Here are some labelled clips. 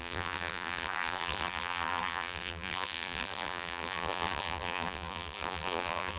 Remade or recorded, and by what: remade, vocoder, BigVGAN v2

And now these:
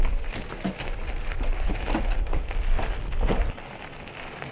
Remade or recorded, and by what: recorded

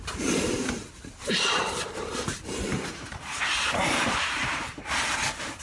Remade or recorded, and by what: remade, vocoder, BigVGAN v2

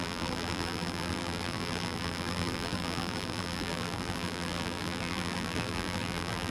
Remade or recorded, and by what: remade, vocoder, BigVGAN v2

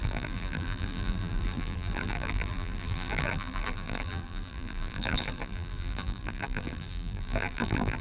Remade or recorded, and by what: remade, vocoder, BigVGAN v2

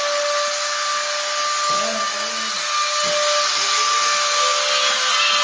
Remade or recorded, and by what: recorded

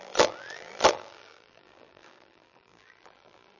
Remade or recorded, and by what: remade, vocoder, BigVGAN v2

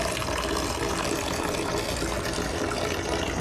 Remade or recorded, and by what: recorded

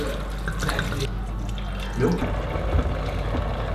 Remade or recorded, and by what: recorded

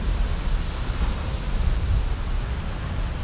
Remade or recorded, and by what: recorded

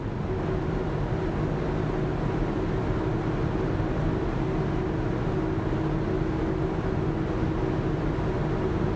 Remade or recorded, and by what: recorded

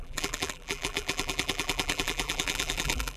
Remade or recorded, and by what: remade, vocoder, BigVGAN v2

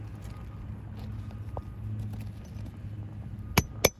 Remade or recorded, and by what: recorded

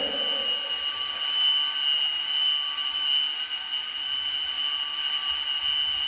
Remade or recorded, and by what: recorded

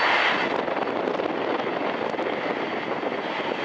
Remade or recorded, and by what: recorded